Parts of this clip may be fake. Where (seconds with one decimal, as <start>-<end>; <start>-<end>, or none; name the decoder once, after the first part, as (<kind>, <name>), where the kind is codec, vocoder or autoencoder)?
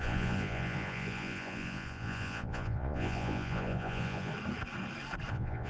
0.0-4.3 (vocoder, Vocos); 5.3-5.7